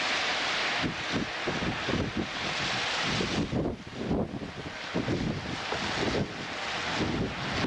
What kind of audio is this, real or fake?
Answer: real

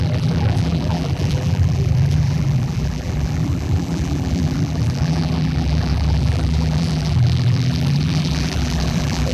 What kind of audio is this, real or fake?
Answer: fake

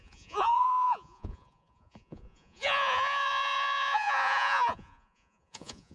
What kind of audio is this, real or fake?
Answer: fake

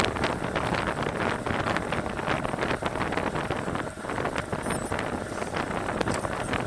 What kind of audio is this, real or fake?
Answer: real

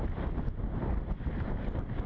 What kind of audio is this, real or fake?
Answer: real